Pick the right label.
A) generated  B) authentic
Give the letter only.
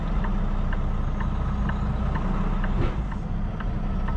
B